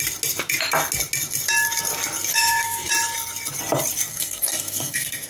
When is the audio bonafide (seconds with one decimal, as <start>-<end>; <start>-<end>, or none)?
0.0-2.3; 2.9-4.1